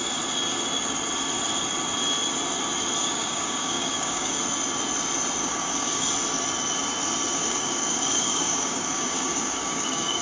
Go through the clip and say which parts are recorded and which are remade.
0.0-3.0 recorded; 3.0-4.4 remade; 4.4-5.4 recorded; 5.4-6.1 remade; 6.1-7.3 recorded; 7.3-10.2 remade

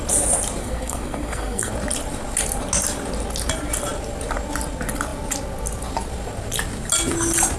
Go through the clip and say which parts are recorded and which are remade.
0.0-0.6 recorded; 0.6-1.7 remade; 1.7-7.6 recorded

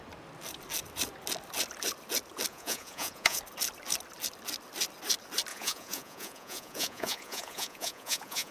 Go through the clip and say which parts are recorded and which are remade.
0.0-2.5 recorded; 2.5-3.4 remade; 3.4-5.5 recorded; 5.5-8.5 remade

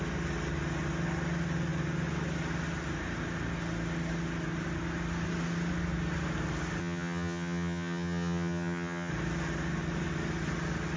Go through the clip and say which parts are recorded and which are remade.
0.0-6.8 recorded; 6.8-9.1 remade; 9.1-11.0 recorded

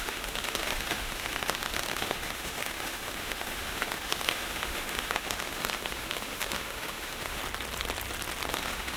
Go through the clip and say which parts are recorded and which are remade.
0.0-7.4 remade; 7.4-8.5 recorded; 8.5-9.0 remade

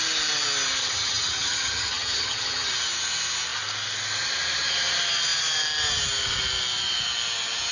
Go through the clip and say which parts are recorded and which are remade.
0.0-0.8 recorded; 0.8-2.7 remade; 2.7-7.7 recorded

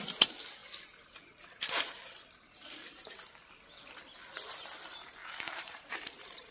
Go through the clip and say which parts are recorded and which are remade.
0.0-5.2 recorded; 5.2-6.5 remade